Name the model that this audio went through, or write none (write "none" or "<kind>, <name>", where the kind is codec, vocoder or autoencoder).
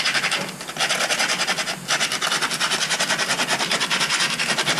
none